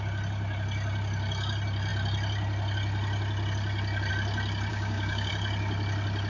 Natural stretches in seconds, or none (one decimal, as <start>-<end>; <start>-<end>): 0.0-4.7; 5.3-6.3